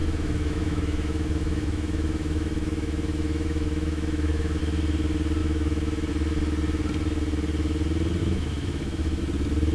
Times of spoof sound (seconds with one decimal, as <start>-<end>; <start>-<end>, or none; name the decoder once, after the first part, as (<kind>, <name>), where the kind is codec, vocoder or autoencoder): 0.0-4.6 (autoencoder, DAC-VAE); 5.4-6.1; 8.2-9.2